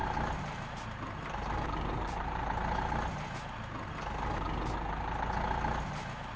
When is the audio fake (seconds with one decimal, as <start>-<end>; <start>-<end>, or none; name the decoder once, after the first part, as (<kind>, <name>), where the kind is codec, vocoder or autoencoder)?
0.0-3.1 (vocoder, BigVGAN v2)